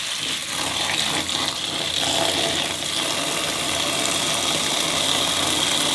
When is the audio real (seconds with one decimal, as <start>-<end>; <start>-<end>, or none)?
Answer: 0.0-5.9